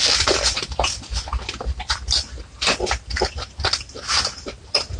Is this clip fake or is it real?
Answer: real